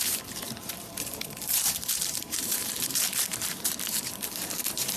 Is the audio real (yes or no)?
no